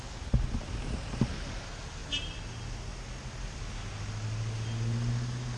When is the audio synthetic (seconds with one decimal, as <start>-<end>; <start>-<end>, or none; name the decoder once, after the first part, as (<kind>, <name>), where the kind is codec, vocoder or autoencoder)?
none